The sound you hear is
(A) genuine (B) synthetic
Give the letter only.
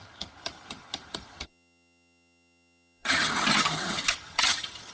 B